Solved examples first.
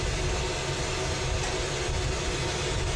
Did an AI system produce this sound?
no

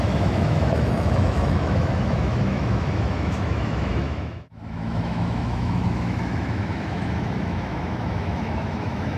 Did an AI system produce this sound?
yes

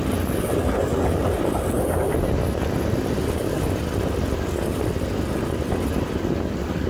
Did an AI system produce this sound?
no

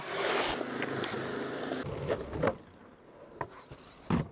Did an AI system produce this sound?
no